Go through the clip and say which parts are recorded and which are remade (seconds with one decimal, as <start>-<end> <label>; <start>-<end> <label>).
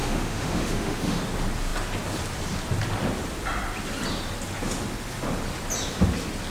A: 0.0-1.2 remade; 1.2-6.5 recorded